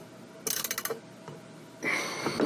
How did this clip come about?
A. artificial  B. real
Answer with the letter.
B